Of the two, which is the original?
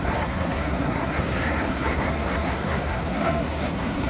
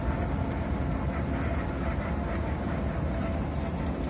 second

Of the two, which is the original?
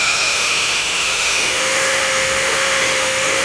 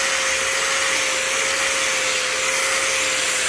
second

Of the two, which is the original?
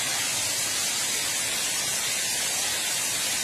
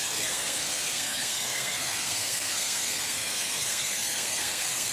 first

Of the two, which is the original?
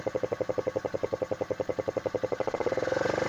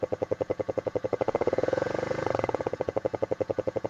first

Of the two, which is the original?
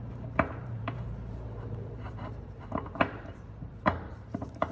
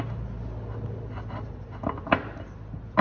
second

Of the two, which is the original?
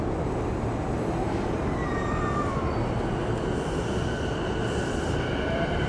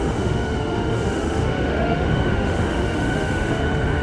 first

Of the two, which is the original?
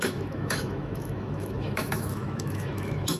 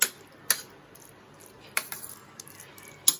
second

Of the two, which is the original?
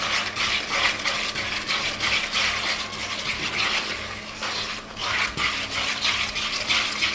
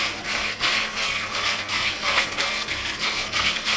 first